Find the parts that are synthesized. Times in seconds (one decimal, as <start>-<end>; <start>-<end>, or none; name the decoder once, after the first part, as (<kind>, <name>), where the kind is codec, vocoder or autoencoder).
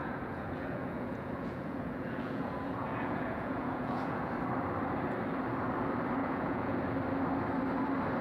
0.0-4.3 (vocoder, Vocos); 6.2-6.8